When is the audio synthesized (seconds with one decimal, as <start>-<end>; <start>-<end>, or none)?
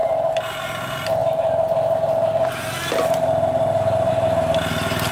none